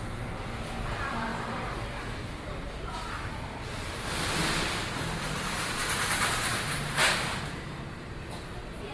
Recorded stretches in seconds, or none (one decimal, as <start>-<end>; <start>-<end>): 1.3-3.1; 4.4-5.2; 5.8-8.2